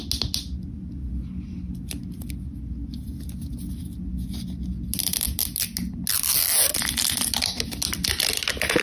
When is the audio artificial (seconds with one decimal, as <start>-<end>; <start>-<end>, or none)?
none